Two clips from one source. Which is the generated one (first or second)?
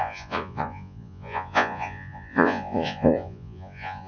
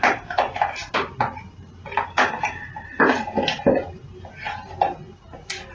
first